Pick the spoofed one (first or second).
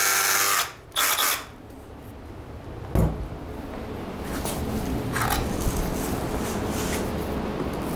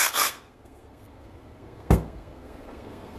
second